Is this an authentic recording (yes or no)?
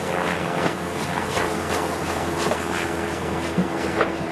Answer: no